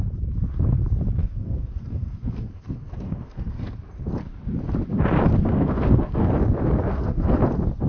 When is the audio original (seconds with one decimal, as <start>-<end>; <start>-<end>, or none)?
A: 0.0-1.2; 3.7-5.3; 6.3-6.9; 7.4-7.9